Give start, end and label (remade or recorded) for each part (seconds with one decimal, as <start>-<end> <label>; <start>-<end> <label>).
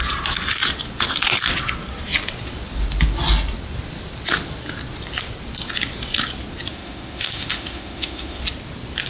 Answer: 0.0-6.7 recorded; 6.7-8.4 remade; 8.4-9.1 recorded